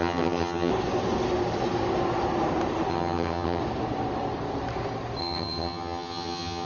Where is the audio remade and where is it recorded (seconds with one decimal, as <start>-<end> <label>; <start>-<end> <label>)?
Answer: 0.0-0.7 remade; 0.7-2.9 recorded; 2.9-3.6 remade; 3.6-5.2 recorded; 5.2-6.7 remade